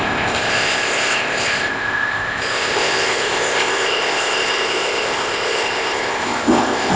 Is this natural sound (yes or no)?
no